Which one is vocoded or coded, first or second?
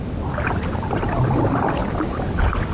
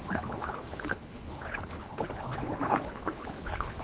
second